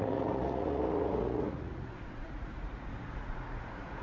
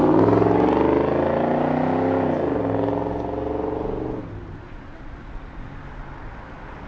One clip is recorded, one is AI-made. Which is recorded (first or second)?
second